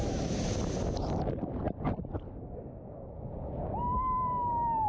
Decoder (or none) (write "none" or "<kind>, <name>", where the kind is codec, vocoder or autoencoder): none